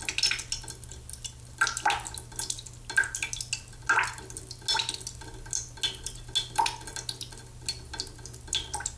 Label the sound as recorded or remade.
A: recorded